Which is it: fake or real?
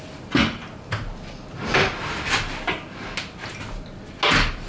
real